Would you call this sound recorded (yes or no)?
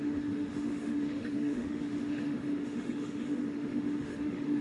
no